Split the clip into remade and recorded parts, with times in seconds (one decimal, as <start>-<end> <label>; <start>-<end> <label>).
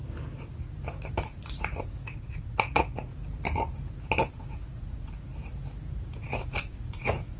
0.0-1.1 recorded; 1.1-3.1 remade; 3.1-4.3 recorded; 4.3-5.3 remade; 5.3-6.4 recorded; 6.4-7.4 remade